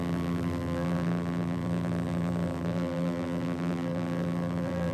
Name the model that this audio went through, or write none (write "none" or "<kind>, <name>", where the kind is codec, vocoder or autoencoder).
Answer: vocoder, BigVGAN v2